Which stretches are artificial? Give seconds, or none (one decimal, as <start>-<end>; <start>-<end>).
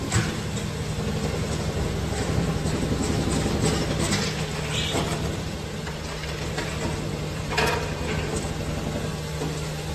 7.1-8.5